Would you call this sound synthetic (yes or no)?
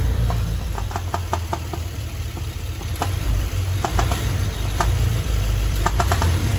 yes